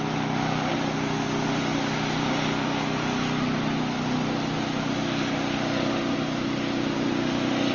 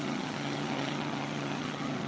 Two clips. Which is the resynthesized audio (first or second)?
second